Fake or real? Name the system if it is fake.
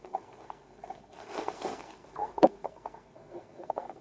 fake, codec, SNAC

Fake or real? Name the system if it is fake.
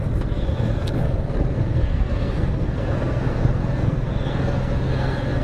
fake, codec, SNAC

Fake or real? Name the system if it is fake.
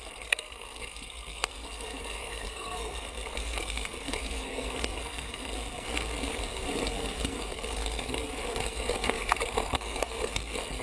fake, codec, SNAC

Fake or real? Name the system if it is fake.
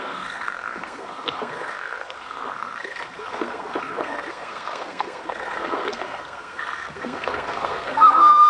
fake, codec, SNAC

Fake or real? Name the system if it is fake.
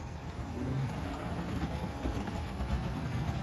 fake, codec, SNAC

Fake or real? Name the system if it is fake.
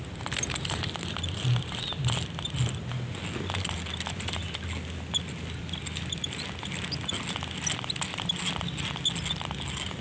real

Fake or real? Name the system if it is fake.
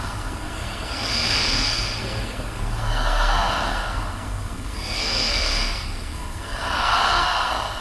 fake, codec, SNAC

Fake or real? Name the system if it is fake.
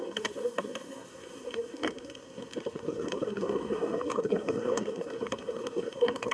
fake, codec, SNAC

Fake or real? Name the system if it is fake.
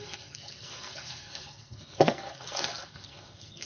fake, codec, SNAC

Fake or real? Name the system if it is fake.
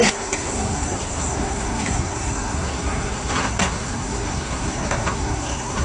fake, codec, SNAC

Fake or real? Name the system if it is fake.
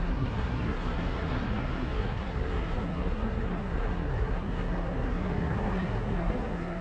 fake, codec, SNAC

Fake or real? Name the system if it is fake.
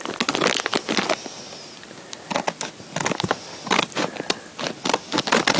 real